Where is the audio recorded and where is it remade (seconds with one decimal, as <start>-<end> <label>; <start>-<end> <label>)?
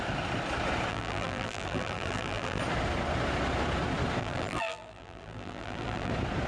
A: 0.0-0.9 recorded; 0.9-2.6 remade; 2.6-4.2 recorded; 4.2-6.1 remade; 6.1-6.5 recorded